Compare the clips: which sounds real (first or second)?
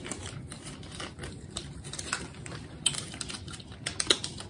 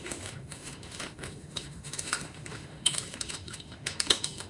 first